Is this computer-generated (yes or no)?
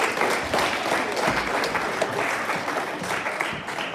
no